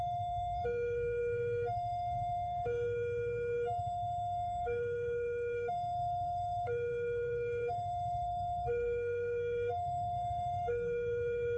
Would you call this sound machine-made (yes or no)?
yes